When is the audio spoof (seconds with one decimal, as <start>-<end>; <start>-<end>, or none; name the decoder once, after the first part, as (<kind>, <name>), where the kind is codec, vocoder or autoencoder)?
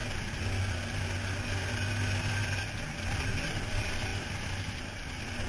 4.1-5.1 (vocoder, BigVGAN v2)